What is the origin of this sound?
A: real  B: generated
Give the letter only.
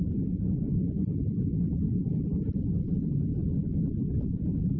B